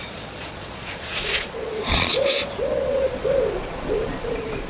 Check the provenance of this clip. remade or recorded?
remade